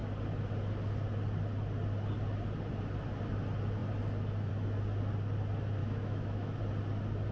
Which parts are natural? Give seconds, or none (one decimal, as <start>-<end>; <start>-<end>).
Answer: 0.0-5.8; 6.6-7.3